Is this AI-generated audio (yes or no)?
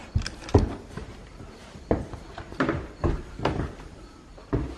yes